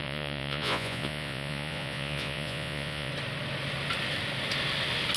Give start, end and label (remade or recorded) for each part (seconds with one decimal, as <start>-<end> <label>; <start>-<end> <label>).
0.0-3.1 remade; 3.1-5.2 recorded